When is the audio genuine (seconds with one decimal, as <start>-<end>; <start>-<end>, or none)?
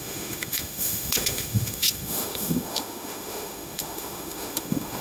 none